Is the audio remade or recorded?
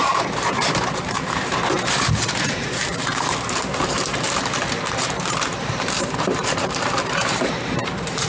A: remade